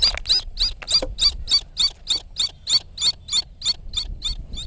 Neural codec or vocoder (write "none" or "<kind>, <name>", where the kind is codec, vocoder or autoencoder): none